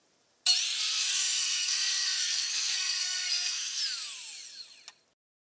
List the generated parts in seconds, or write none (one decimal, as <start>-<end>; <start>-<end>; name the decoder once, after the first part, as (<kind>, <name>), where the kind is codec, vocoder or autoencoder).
0.9-3.8 (codec, SNAC)